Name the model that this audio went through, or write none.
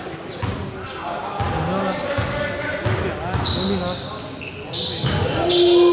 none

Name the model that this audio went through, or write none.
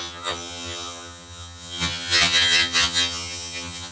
vocoder, HiFi-GAN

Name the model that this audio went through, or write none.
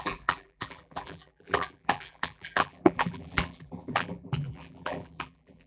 vocoder, BigVGAN v2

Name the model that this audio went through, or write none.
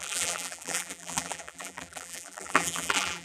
vocoder, BigVGAN v2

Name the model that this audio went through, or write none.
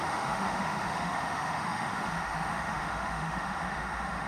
autoencoder, DAC-VAE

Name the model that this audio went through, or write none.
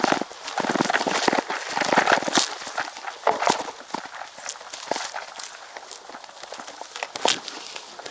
none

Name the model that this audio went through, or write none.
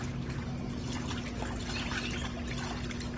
none